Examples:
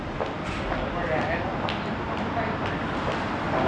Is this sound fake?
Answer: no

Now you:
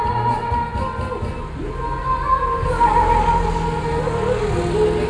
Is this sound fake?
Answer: no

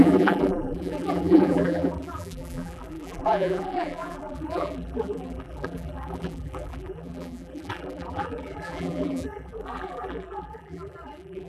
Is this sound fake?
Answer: yes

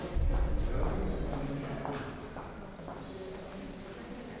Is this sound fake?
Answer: no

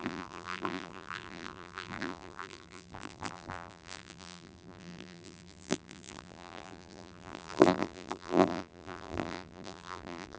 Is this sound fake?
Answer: yes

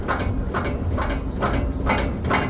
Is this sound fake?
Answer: no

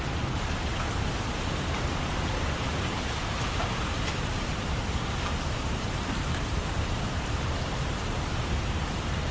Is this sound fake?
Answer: yes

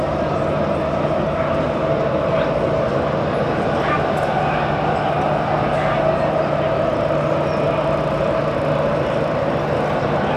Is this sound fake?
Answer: no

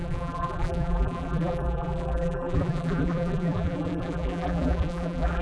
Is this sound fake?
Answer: yes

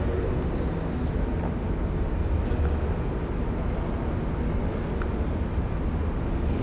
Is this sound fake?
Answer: no